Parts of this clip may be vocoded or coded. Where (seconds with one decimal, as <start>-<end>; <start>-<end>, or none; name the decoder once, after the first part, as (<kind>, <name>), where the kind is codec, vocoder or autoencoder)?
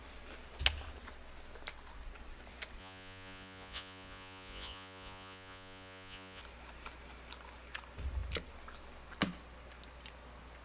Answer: 2.8-6.4 (vocoder, Vocos)